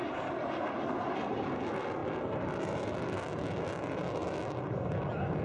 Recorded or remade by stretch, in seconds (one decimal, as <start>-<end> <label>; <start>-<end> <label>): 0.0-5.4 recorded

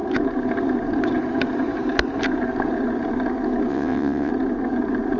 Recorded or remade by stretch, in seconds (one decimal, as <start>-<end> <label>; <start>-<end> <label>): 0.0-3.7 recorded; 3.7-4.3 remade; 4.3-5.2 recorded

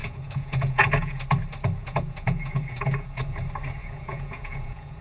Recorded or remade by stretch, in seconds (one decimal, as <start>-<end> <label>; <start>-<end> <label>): 0.0-1.2 remade; 1.2-1.8 recorded; 1.8-3.2 remade; 3.2-3.8 recorded; 3.8-5.0 remade

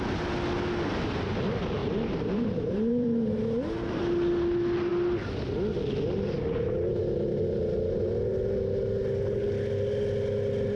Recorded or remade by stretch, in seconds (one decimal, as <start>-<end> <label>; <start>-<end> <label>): 0.0-1.8 recorded; 1.8-4.0 remade; 4.0-10.8 recorded

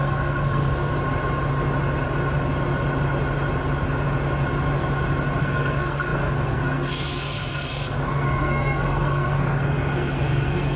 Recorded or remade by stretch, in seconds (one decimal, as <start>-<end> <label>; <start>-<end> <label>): 0.0-0.9 remade; 0.9-5.4 recorded; 5.4-10.8 remade

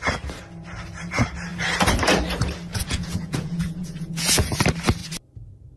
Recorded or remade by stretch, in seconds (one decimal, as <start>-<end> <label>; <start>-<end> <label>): 0.0-2.7 recorded; 2.7-4.6 remade; 4.6-5.8 recorded

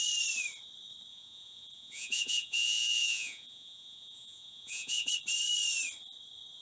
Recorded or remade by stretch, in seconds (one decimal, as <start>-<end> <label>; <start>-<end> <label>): 0.0-1.1 recorded; 1.1-5.1 remade; 5.1-6.6 recorded

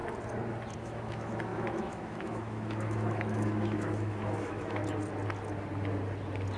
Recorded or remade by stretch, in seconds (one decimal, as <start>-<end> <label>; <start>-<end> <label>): 0.0-0.8 recorded; 0.8-4.8 remade; 4.8-6.6 recorded